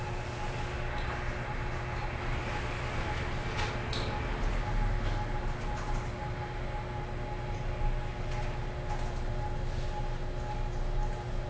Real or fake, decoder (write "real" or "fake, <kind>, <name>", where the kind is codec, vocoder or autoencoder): real